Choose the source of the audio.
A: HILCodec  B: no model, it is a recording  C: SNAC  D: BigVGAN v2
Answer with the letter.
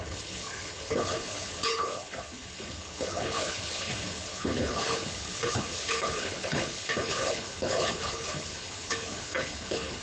A